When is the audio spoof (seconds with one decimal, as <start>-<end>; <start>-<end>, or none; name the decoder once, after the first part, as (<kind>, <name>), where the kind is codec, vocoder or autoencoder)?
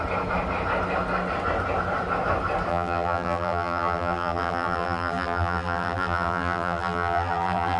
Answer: 2.7-7.8 (vocoder, BigVGAN v2)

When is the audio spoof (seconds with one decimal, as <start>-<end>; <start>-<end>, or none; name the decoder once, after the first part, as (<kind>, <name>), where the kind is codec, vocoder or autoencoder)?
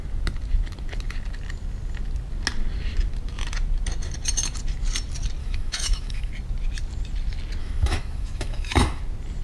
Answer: 5.4-6.3 (autoencoder, DAC-VAE); 7.6-9.0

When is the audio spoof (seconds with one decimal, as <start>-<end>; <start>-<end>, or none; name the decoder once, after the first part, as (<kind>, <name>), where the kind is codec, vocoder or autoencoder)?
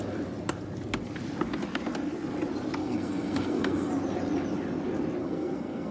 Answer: 2.8-3.9 (codec, SNAC); 5.2-5.9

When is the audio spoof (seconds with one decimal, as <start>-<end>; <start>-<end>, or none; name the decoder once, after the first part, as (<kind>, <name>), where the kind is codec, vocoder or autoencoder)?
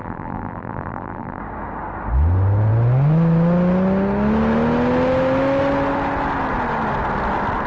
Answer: 0.0-1.4 (vocoder, BigVGAN v2)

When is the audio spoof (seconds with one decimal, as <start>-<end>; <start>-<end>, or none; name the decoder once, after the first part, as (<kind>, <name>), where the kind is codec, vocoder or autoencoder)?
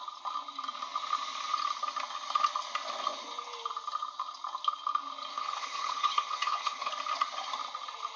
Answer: 5.3-6.9 (codec, HILCodec)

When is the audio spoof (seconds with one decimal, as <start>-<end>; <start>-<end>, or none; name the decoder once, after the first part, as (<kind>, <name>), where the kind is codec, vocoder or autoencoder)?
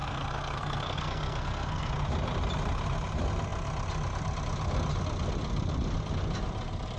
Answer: 0.0-1.9 (codec, SNAC)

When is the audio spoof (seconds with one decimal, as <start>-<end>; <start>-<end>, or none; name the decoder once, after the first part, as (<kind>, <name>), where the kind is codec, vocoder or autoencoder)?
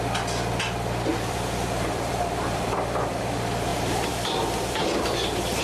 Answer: 1.1-3.2 (vocoder, BigVGAN v2); 3.7-5.6